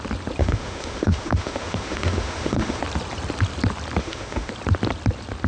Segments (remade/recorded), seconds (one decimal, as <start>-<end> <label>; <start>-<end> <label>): 0.0-0.4 recorded; 0.4-2.8 remade; 2.8-4.0 recorded; 4.0-4.5 remade; 4.5-5.5 recorded